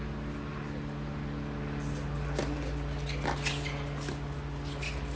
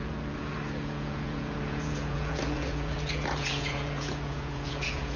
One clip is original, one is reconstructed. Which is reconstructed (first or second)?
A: second